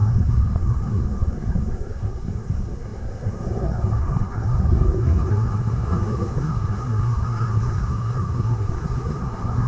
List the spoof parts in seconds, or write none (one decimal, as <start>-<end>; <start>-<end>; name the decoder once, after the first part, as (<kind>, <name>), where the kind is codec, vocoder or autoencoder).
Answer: 0.0-9.7 (codec, SNAC)